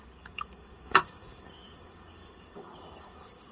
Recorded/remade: remade